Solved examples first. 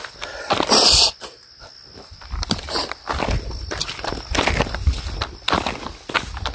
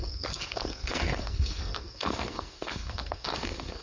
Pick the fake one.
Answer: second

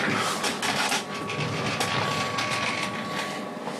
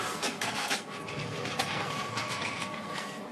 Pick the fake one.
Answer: second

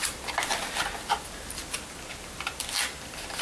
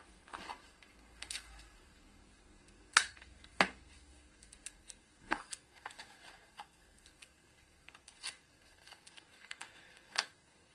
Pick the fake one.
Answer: second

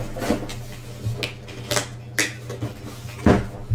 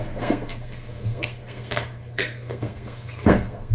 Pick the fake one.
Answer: second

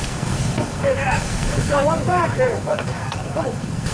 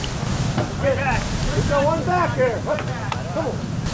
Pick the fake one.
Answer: first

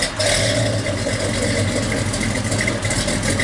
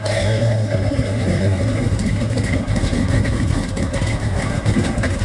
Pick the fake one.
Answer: second